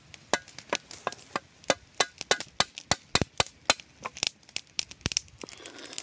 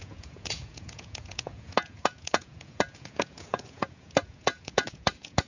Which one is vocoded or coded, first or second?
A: second